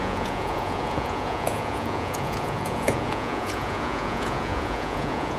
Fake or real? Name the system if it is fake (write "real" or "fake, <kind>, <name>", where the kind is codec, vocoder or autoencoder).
fake, vocoder, Vocos